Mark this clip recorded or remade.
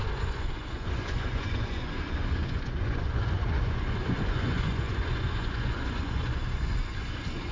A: remade